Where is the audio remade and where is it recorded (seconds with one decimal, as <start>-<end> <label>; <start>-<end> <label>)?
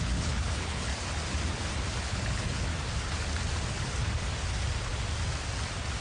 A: 0.0-0.9 remade; 0.9-2.0 recorded; 2.0-2.7 remade; 2.7-6.0 recorded